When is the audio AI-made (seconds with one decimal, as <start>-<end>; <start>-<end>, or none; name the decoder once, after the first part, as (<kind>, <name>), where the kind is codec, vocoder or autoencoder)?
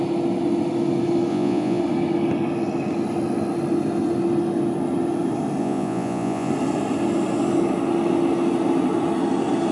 1.3-1.8 (vocoder, Vocos); 5.6-6.5